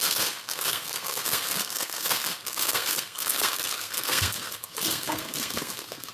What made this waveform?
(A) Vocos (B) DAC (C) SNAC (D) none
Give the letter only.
C